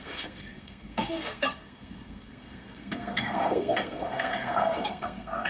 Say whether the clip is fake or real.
fake